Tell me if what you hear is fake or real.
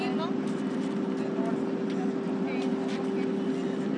real